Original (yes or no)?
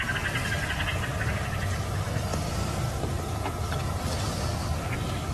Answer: yes